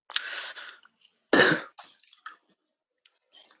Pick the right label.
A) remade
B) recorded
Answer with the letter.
B